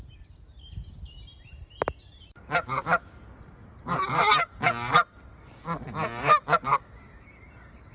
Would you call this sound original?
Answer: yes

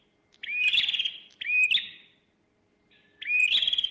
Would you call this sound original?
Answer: yes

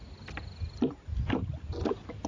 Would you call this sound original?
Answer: yes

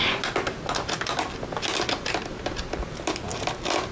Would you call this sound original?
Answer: yes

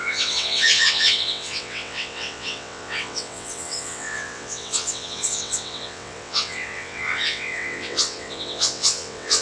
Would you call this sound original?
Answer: no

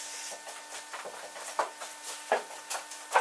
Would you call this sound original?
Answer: yes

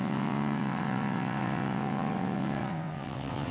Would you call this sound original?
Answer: no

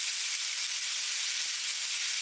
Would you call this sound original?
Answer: yes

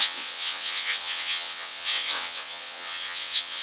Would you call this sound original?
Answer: no